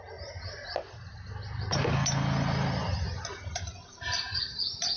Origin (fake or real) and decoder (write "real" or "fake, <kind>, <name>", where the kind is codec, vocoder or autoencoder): real